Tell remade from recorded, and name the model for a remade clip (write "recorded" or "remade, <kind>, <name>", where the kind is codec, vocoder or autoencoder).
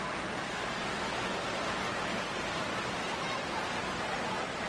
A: recorded